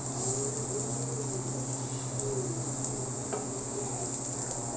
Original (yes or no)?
yes